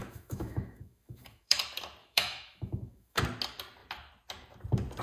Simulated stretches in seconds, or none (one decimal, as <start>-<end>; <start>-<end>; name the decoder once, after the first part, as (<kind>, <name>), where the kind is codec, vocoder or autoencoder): 0.0-1.6 (autoencoder, DAC-VAE); 2.0-3.2